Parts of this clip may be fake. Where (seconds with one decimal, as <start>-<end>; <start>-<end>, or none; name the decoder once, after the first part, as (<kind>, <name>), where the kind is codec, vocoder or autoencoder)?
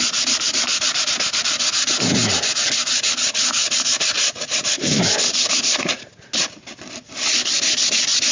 3.6-6.0 (vocoder, BigVGAN v2)